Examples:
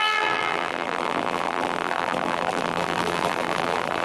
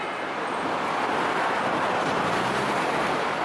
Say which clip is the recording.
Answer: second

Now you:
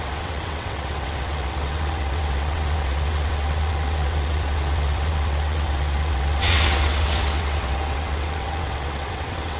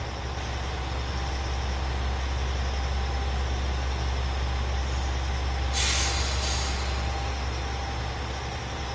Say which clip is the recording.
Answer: second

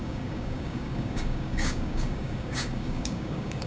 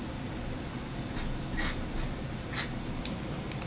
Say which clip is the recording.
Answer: second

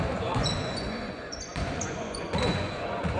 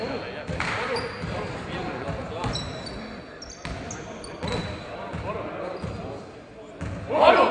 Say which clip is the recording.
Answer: second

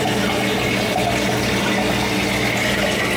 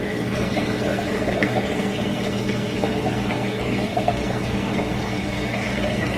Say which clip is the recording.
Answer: first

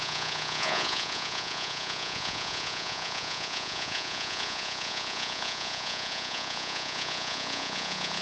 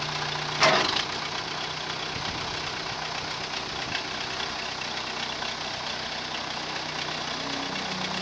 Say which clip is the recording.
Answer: second